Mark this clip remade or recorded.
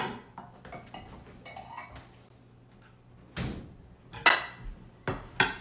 recorded